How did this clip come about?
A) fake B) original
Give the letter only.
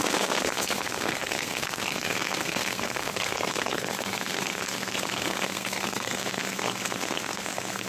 A